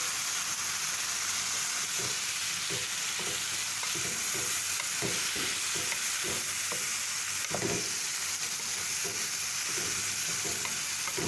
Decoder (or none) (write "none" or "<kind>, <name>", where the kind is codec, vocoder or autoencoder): none